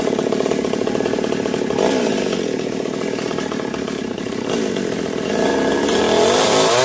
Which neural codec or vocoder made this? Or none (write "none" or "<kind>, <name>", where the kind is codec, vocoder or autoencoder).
none